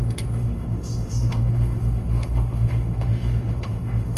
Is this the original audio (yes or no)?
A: no